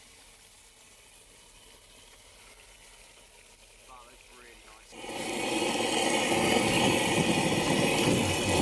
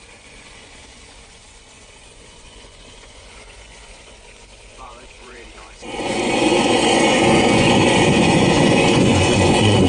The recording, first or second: first